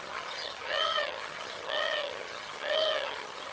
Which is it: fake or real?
fake